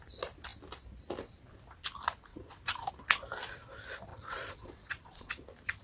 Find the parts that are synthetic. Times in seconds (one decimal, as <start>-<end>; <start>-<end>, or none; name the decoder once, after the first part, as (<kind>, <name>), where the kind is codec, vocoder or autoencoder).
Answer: 2.3-2.9 (vocoder, Vocos); 4.1-5.3